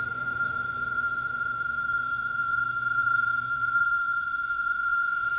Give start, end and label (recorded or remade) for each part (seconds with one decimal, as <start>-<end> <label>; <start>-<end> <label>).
0.0-5.4 remade